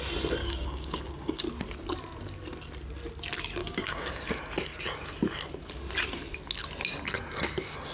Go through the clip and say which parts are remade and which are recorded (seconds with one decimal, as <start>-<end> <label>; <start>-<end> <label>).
0.0-0.4 recorded; 0.4-1.4 remade; 1.4-3.6 recorded; 3.6-4.1 remade; 4.1-7.9 recorded

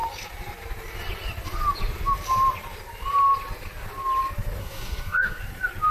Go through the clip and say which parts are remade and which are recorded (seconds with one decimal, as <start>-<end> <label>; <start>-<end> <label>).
0.0-4.6 recorded; 4.6-5.4 remade; 5.4-5.9 recorded

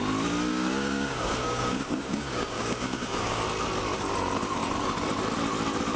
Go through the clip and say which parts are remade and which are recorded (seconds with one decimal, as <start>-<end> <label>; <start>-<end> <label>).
0.0-0.5 recorded; 0.5-3.4 remade; 3.4-6.0 recorded

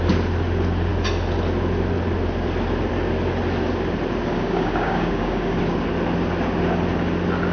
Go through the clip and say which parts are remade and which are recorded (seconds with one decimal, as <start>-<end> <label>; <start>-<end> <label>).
0.0-4.3 recorded; 4.3-5.6 remade; 5.6-7.5 recorded